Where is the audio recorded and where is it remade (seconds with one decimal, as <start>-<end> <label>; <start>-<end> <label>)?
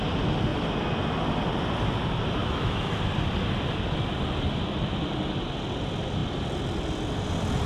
0.0-2.4 recorded; 2.4-3.0 remade; 3.0-7.7 recorded